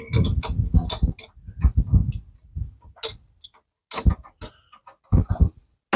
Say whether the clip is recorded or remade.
recorded